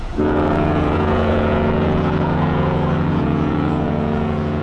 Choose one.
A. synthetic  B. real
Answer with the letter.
A